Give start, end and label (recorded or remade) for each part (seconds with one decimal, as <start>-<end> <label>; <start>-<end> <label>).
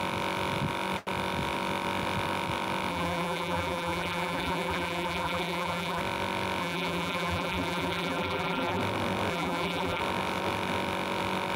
0.0-2.9 recorded; 2.9-6.0 remade; 6.0-6.6 recorded; 6.6-8.8 remade; 8.8-9.3 recorded; 9.3-10.0 remade; 10.0-11.6 recorded